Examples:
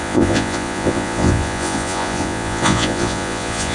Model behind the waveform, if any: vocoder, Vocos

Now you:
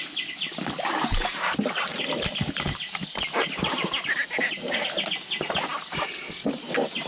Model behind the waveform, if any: none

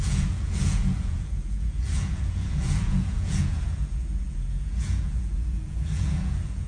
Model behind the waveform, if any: vocoder, Vocos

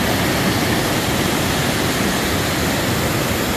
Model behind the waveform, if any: none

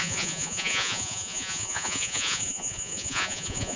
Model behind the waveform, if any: vocoder, Vocos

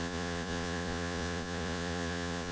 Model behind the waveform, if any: vocoder, Vocos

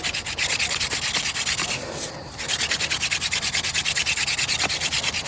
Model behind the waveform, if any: none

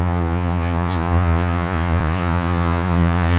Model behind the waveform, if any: vocoder, Vocos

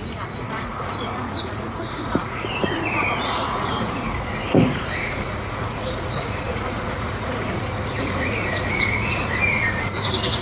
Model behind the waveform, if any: vocoder, Vocos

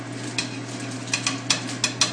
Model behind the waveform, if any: none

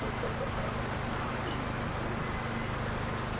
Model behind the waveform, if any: none